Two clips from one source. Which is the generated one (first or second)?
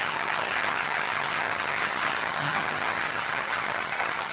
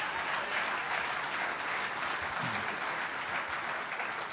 first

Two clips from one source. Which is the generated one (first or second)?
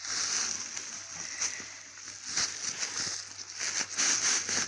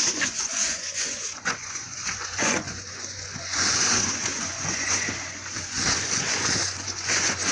second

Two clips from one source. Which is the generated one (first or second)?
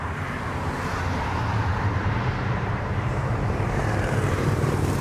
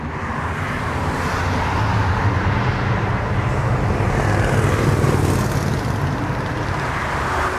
first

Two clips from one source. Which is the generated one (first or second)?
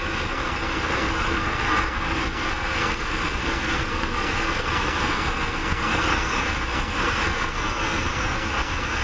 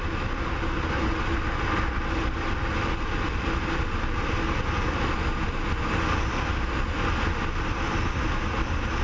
first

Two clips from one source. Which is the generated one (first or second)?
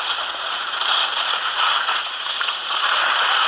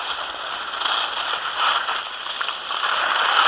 first